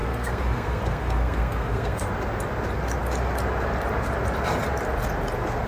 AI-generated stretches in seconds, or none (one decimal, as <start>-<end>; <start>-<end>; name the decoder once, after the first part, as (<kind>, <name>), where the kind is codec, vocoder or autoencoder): 0.0-2.1 (codec, SNAC)